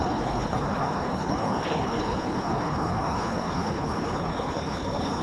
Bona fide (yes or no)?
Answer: no